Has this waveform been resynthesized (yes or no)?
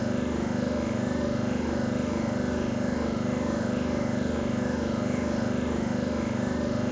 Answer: yes